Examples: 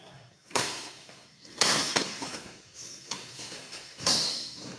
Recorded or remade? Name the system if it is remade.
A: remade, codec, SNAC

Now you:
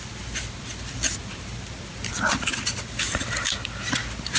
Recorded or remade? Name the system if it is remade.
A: recorded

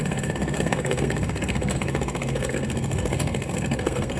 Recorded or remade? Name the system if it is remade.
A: remade, codec, SNAC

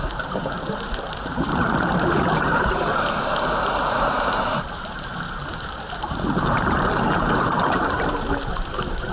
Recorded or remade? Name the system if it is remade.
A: remade, vocoder, BigVGAN v2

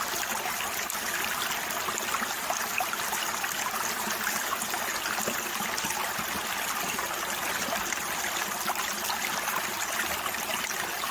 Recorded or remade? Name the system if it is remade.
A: recorded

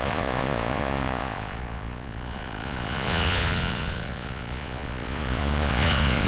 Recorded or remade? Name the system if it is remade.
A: remade, vocoder, Vocos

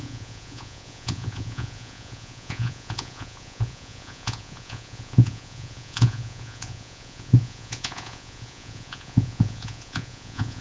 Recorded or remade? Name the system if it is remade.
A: remade, vocoder, Vocos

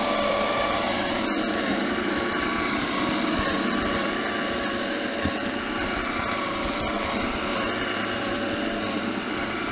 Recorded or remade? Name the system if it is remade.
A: remade, vocoder, BigVGAN v2